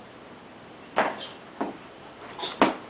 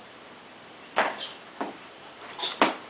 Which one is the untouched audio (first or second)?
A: first